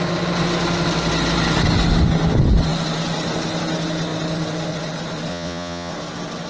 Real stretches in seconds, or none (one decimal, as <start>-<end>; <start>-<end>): 0.0-5.3; 5.9-6.5